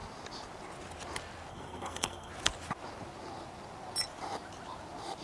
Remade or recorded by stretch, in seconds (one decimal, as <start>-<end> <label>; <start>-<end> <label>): 0.0-1.5 recorded; 1.5-2.3 remade; 2.3-5.2 recorded